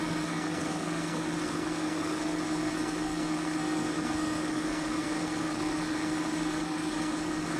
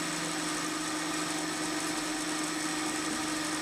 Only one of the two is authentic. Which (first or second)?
second